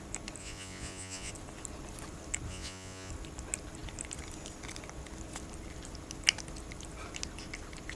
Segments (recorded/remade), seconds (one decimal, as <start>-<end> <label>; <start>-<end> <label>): 0.0-0.4 recorded; 0.4-1.3 remade; 1.3-2.5 recorded; 2.5-3.1 remade; 3.1-8.0 recorded